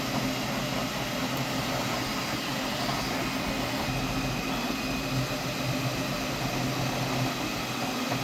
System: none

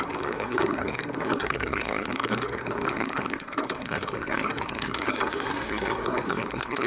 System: codec, SNAC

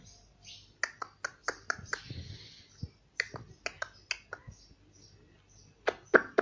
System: none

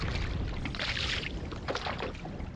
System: none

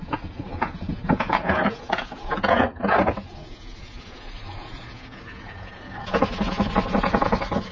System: vocoder, Vocos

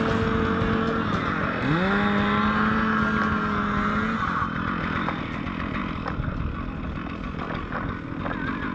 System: none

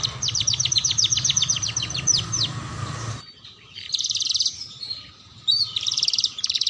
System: vocoder, BigVGAN v2